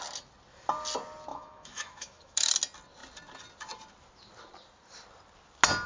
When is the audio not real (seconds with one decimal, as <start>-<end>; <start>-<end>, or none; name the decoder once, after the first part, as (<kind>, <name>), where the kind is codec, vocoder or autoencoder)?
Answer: 1.3-2.5 (autoencoder, DAC-VAE)

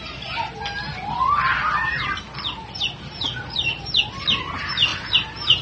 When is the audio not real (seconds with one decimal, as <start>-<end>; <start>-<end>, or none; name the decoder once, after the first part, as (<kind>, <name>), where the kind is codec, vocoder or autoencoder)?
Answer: none

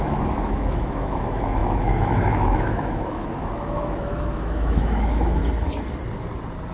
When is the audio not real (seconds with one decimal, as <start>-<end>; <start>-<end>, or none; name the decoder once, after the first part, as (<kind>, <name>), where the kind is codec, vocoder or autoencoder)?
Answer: 0.0-5.4 (autoencoder, DAC-VAE)